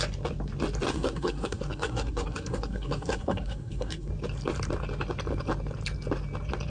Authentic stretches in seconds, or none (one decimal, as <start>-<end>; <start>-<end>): 0.0-0.9; 4.1-6.7

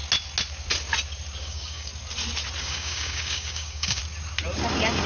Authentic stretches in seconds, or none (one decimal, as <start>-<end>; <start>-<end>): 0.0-1.4; 1.9-2.6; 4.0-5.1